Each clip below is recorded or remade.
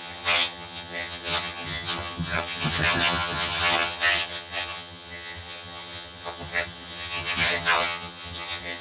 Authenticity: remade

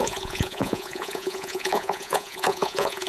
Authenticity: remade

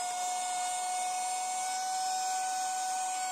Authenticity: recorded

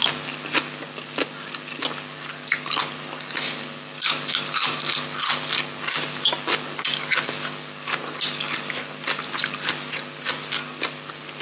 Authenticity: recorded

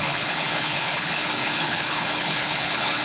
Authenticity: remade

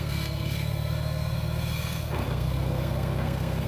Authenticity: remade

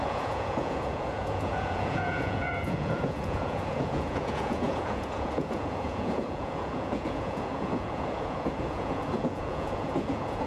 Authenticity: remade